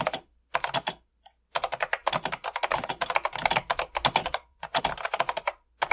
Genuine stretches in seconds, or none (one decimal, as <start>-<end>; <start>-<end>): 0.0-4.2; 4.8-5.9